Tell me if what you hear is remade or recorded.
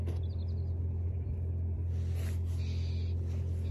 recorded